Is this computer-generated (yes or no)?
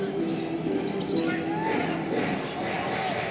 no